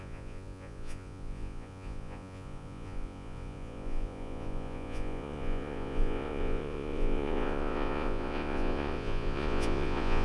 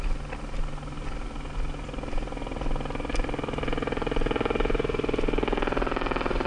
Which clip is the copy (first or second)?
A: first